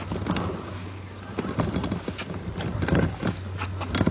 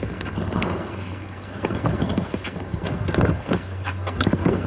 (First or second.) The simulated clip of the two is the second